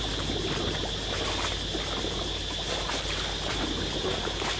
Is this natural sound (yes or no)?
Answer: yes